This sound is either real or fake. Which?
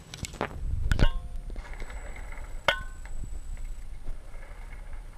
real